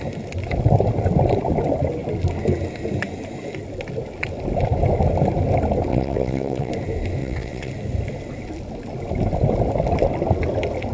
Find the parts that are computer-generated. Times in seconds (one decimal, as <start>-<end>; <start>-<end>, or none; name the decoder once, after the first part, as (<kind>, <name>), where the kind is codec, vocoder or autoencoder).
5.9-6.7 (vocoder, WaveNeXt); 7.2-7.7